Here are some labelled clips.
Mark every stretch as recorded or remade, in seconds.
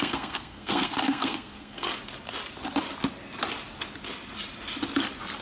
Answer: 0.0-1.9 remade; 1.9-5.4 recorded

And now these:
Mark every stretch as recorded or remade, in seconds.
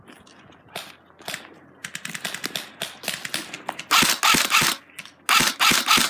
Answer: 0.0-6.1 recorded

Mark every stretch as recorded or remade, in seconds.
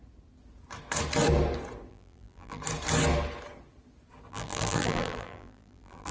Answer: 0.0-1.9 recorded; 1.9-2.6 remade; 2.6-4.3 recorded; 4.3-6.1 remade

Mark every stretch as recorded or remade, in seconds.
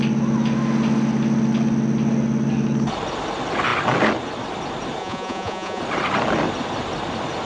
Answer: 0.0-5.0 recorded; 5.0-5.8 remade; 5.8-7.5 recorded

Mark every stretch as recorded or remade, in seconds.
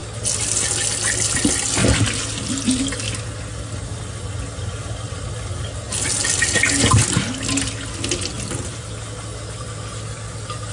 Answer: 0.0-8.3 recorded; 8.3-9.0 remade; 9.0-10.7 recorded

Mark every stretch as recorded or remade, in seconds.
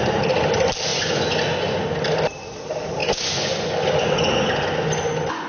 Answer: 0.0-0.9 recorded; 0.9-1.8 remade; 1.8-3.0 recorded; 3.0-5.5 remade